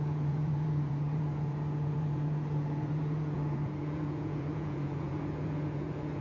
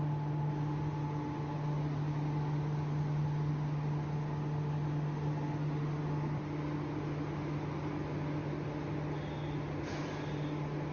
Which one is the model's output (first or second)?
first